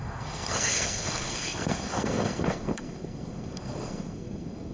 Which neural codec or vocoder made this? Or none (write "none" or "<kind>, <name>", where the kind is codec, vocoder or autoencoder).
codec, SNAC